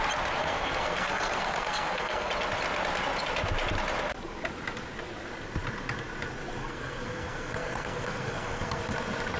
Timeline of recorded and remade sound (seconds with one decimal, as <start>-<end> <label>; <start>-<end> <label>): 0.0-0.4 recorded; 0.4-2.3 remade; 2.3-6.6 recorded; 6.6-8.8 remade; 8.8-9.4 recorded